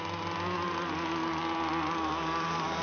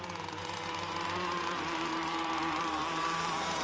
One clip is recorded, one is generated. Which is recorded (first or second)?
first